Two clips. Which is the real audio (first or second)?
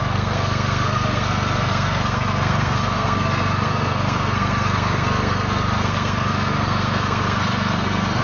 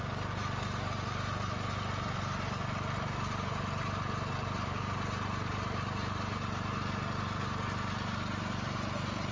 second